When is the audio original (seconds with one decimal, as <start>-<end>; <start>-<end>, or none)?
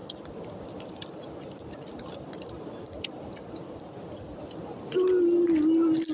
0.0-6.1